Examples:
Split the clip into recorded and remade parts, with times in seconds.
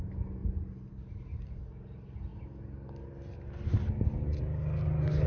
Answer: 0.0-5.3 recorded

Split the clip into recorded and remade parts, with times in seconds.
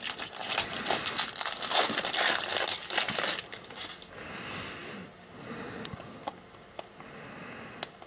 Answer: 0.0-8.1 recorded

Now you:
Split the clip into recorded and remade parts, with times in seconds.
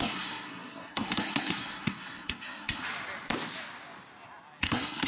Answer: 0.0-2.8 remade; 2.8-4.6 recorded; 4.6-5.1 remade